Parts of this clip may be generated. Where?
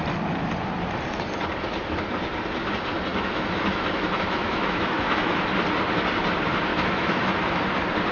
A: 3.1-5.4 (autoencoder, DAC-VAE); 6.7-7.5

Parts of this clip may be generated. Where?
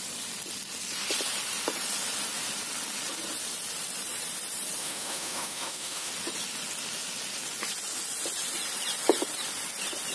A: 4.8-6.1 (autoencoder, DAC-VAE)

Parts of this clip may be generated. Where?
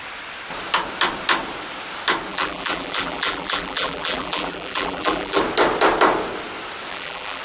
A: 2.3-5.4 (vocoder, BigVGAN v2); 6.9-7.4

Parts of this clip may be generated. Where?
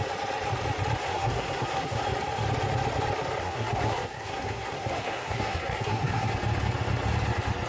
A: 1.0-2.0 (codec, SNAC); 3.4-6.3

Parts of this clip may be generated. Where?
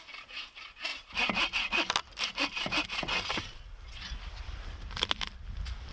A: none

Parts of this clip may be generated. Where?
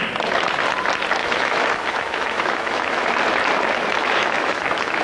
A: 1.2-3.1 (autoencoder, DAC-VAE); 4.0-5.0